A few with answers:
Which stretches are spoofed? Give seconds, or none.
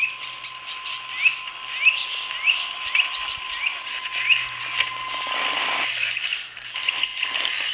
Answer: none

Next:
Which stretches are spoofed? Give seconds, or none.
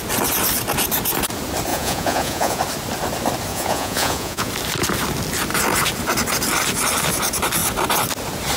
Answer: 1.7-2.6 (vocoder, Vocos); 3.5-4.5